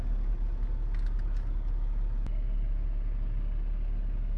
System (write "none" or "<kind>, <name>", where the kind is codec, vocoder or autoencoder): none